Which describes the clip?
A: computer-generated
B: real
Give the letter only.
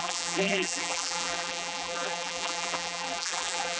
A